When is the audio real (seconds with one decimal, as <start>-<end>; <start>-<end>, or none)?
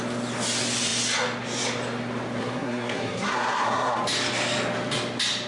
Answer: 0.0-2.4; 4.0-5.5